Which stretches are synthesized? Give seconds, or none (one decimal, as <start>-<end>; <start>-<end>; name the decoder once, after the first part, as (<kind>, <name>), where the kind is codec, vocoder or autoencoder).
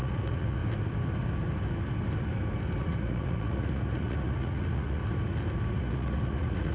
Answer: 0.0-0.6 (vocoder, Vocos); 2.8-5.0; 5.7-6.7